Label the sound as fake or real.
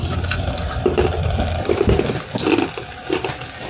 real